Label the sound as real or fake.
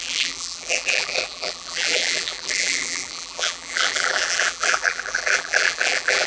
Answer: fake